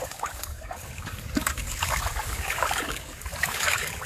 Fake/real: fake